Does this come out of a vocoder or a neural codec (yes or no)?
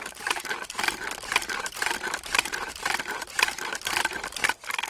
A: no